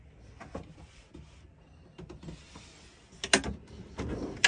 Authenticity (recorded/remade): recorded